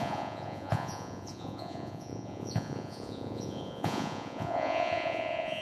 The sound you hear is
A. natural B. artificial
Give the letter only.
B